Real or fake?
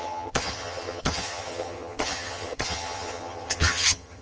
fake